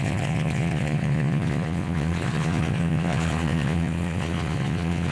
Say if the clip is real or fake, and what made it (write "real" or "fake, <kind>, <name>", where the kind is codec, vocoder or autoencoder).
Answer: fake, vocoder, Vocos